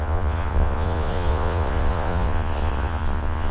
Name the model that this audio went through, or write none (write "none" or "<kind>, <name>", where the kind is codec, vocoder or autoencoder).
vocoder, Vocos